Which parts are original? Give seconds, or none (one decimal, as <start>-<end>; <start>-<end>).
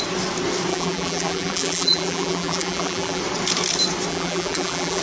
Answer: 0.0-0.7; 3.2-4.1